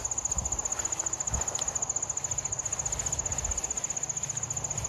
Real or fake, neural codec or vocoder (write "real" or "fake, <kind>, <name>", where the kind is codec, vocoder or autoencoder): real